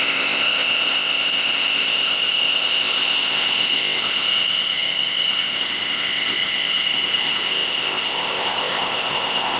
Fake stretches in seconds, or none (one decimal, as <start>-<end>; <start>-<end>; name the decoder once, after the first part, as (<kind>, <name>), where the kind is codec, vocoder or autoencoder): 0.0-9.6 (codec, ZipCodec)